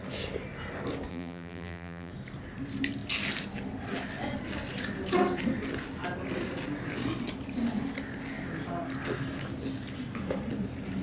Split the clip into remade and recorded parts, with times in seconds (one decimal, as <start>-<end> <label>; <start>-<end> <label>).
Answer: 0.0-1.1 recorded; 1.1-2.1 remade; 2.1-11.0 recorded